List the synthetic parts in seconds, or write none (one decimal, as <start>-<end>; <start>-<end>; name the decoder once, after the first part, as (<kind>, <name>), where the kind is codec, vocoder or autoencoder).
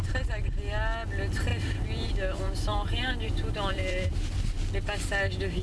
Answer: 1.5-2.1 (vocoder, BigVGAN v2); 2.7-4.3